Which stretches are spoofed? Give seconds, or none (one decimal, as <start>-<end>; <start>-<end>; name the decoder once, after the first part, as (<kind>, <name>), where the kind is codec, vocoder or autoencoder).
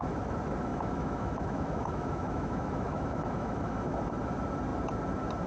0.7-4.0 (autoencoder, DAC-VAE)